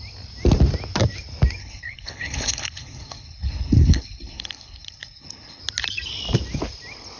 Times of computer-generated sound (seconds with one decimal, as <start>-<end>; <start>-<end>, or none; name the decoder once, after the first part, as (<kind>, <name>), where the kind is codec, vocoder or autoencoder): 1.6-5.6 (codec, HILCodec)